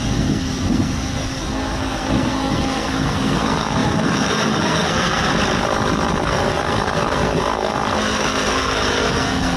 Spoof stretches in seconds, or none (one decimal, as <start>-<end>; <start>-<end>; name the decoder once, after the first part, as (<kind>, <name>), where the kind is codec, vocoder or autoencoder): 0.0-5.3 (codec, SNAC); 6.1-9.6